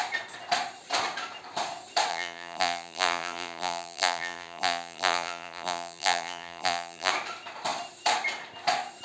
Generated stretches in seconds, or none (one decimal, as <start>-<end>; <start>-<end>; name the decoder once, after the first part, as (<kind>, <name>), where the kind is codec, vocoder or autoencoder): 2.1-7.1 (vocoder, BigVGAN v2)